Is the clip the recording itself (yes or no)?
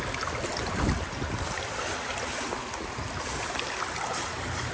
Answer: yes